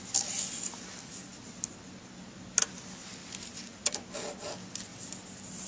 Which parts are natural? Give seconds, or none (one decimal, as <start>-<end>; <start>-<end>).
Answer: 0.0-5.7